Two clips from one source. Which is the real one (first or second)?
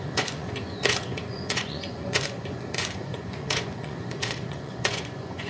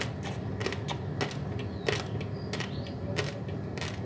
second